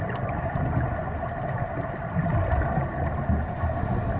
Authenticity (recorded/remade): recorded